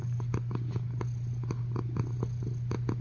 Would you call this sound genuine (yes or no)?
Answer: yes